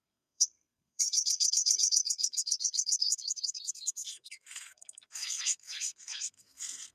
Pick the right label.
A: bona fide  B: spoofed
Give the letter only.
B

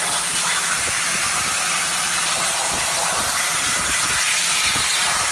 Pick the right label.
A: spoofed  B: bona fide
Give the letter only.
B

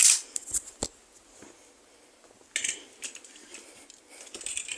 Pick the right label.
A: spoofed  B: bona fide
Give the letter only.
B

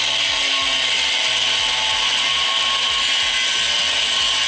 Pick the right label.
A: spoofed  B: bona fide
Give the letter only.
B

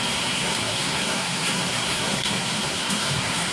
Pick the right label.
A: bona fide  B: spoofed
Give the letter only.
B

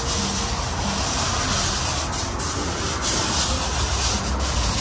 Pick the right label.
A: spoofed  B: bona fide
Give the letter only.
B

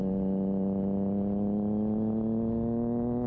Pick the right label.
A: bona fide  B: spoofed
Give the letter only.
A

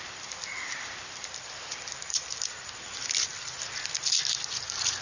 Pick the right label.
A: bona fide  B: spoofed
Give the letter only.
B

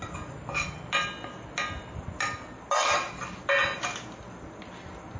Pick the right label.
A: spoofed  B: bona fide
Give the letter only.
B